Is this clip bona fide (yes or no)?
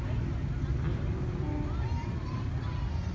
yes